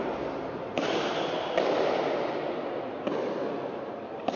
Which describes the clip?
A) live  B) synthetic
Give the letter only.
A